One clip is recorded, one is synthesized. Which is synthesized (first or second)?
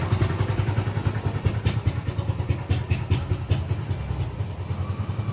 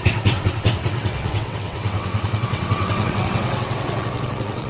second